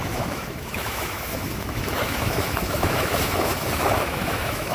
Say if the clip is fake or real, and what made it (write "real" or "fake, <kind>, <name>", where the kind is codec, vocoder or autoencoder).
fake, autoencoder, DAC-VAE